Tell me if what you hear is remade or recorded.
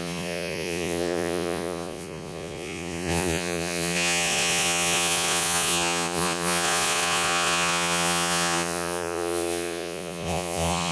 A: remade